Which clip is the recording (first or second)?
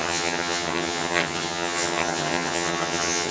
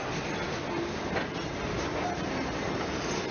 second